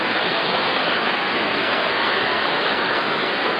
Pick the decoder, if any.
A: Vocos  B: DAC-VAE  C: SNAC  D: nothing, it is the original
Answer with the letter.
C